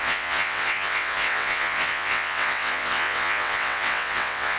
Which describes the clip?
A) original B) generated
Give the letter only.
B